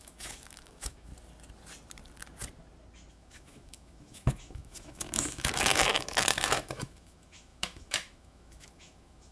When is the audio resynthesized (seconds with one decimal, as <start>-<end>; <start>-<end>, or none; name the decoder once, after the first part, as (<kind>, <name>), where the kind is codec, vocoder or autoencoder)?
0.0-1.1 (autoencoder, DAC-VAE); 3.1-9.3